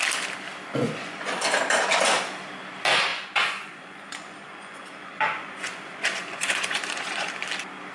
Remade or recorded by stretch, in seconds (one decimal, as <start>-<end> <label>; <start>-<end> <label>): 0.0-0.7 recorded; 0.7-1.3 remade; 1.3-3.1 recorded; 3.1-7.3 remade; 7.3-7.9 recorded